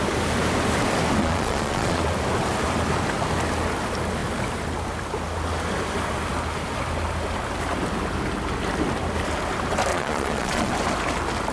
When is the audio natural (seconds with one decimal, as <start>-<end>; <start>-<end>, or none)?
0.0-1.2; 2.0-9.9; 10.7-11.5